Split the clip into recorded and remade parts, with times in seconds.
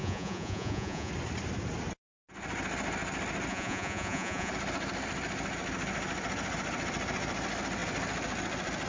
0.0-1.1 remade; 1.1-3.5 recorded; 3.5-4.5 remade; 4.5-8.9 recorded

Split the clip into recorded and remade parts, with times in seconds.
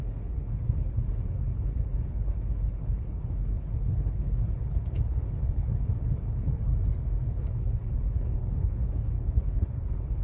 0.0-6.7 remade; 6.7-7.3 recorded; 7.3-10.2 remade